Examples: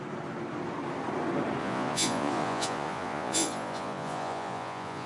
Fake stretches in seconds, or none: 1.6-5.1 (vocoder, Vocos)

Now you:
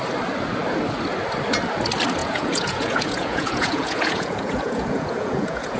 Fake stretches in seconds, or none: 2.2-5.8 (vocoder, Vocos)

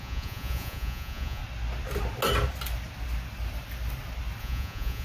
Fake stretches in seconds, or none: 0.0-1.4 (vocoder, Vocos); 4.4-5.0

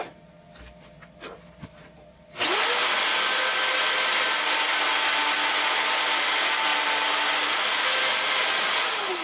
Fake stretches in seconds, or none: none

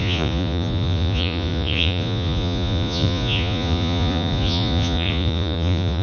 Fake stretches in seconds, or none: 0.0-6.0 (vocoder, Vocos)